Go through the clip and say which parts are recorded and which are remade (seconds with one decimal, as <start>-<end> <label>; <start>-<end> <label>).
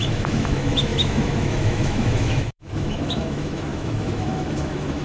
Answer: 0.0-5.0 remade